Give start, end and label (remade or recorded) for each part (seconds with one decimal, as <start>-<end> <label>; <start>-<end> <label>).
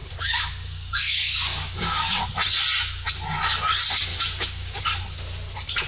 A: 0.0-2.2 remade; 2.2-4.1 recorded; 4.1-4.8 remade; 4.8-5.9 recorded